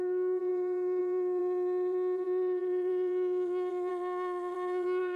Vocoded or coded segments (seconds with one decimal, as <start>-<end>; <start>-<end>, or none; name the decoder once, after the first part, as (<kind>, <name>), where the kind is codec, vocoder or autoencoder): 0.0-5.2 (vocoder, BigVGAN v2)